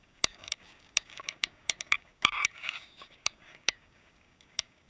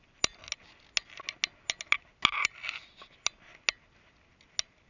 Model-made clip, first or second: first